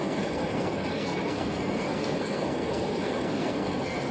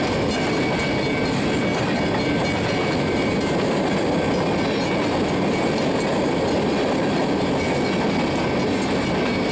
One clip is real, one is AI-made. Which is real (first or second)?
second